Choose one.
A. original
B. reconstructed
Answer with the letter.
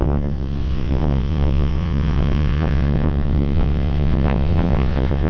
B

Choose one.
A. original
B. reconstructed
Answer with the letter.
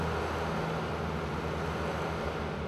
A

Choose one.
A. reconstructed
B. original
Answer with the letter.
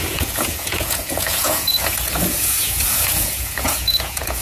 A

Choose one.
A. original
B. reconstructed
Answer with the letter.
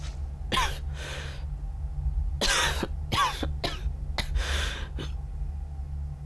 A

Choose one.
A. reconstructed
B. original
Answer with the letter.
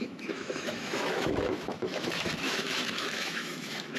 A